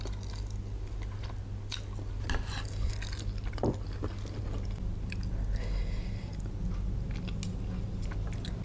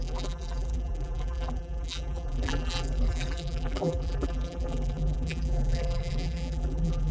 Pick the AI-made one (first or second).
second